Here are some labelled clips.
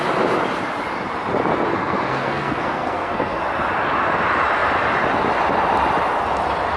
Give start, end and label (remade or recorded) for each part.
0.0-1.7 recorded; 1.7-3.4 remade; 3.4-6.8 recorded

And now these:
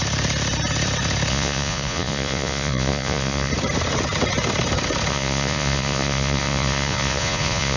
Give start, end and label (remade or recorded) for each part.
0.0-1.3 recorded; 1.3-3.5 remade; 3.5-5.1 recorded; 5.1-7.8 remade